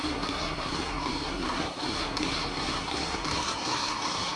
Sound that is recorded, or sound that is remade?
remade